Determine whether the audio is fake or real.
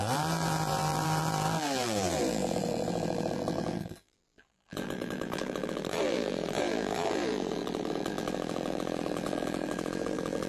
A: fake